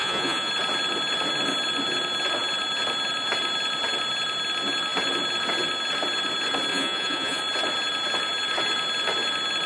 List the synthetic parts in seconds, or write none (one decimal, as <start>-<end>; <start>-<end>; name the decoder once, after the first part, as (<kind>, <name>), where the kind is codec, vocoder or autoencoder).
0.0-0.5 (vocoder, Vocos); 6.7-7.4